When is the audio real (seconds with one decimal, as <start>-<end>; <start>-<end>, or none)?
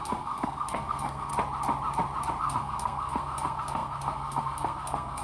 1.3-2.4